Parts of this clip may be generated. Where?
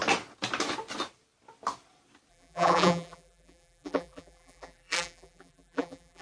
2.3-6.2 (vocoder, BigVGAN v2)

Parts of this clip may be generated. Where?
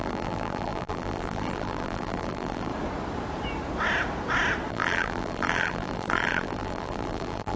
0.0-2.7 (vocoder, BigVGAN v2); 4.7-7.6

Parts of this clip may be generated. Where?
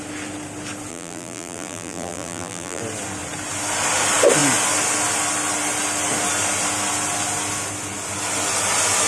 0.9-2.8 (vocoder, BigVGAN v2)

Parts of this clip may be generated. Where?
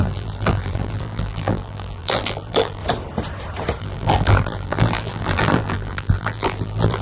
0.0-2.8 (vocoder, BigVGAN v2); 3.8-7.0